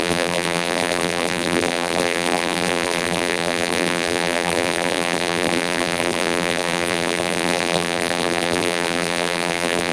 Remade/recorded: remade